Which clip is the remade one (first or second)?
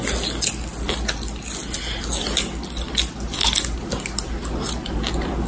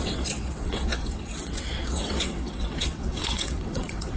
second